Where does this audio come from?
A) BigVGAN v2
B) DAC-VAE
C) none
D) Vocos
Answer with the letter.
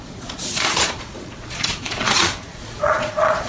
D